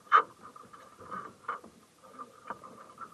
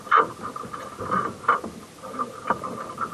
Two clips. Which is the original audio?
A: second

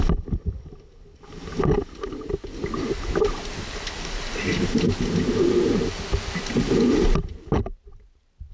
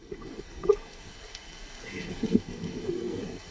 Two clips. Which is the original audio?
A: first